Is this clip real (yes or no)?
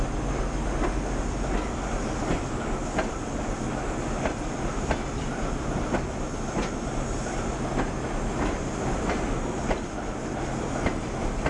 yes